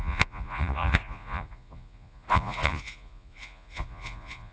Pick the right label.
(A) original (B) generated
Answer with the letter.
B